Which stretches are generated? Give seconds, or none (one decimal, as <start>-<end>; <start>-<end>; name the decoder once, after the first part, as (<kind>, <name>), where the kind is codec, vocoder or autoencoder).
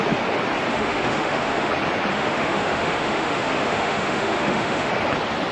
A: 0.7-1.7 (autoencoder, DAC-VAE); 2.1-4.9